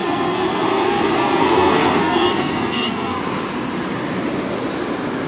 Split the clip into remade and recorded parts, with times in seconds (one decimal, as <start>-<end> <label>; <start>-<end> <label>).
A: 0.0-3.2 remade; 3.2-5.3 recorded